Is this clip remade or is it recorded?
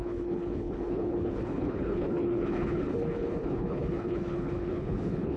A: remade